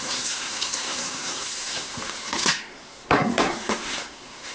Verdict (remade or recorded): remade